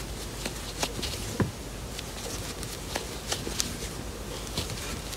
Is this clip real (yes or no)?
yes